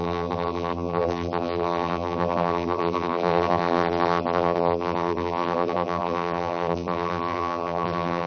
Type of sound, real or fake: fake